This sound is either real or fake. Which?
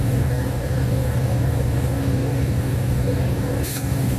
fake